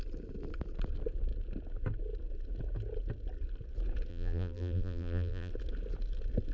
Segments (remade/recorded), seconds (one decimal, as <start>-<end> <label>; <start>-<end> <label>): 0.0-4.1 recorded; 4.1-5.5 remade; 5.5-6.5 recorded